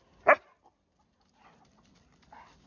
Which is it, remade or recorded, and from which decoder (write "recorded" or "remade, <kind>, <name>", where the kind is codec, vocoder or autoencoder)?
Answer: recorded